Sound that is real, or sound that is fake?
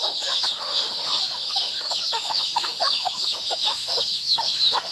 fake